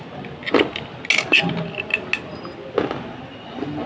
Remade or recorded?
recorded